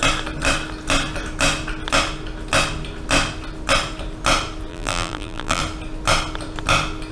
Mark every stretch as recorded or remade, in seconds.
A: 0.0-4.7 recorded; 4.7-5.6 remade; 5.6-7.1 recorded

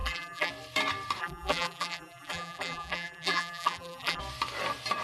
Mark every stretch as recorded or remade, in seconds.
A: 0.0-0.5 remade; 0.5-1.2 recorded; 1.2-4.2 remade; 4.2-5.0 recorded